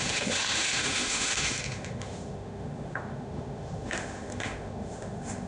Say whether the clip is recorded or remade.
remade